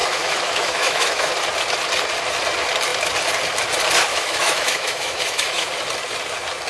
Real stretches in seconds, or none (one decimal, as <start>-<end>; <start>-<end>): 1.3-4.1; 5.7-6.7